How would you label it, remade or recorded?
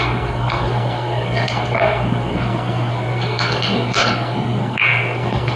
remade